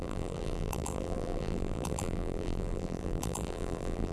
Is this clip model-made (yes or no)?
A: yes